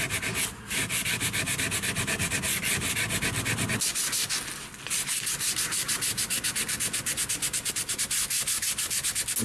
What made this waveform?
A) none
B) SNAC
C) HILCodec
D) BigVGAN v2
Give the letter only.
A